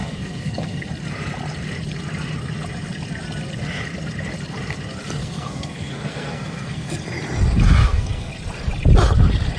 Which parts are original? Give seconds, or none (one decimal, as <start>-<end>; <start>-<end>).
0.9-5.2; 6.9-7.8; 8.3-9.6